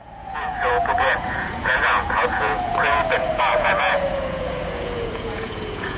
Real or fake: fake